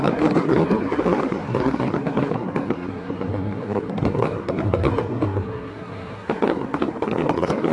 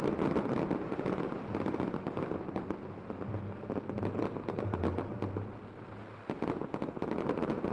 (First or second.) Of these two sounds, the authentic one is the second